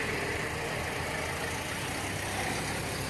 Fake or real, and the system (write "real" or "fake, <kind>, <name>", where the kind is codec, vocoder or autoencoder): real